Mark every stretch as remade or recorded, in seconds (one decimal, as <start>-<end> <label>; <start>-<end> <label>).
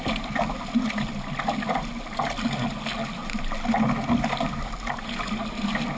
0.0-6.0 recorded